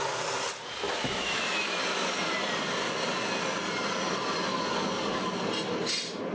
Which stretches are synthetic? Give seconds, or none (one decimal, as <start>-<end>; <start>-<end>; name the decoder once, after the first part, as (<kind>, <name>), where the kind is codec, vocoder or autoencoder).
0.8-2.2 (autoencoder, DAC-VAE)